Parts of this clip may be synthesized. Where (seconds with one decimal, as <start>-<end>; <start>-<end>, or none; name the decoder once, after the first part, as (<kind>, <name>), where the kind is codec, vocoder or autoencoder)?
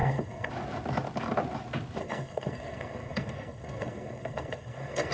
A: 0.0-0.5 (codec, SNAC); 2.0-5.1